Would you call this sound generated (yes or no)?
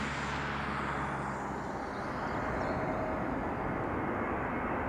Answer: no